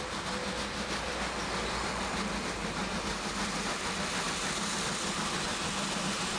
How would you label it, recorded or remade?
recorded